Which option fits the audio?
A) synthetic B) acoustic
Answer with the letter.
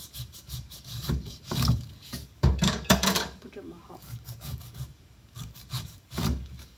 A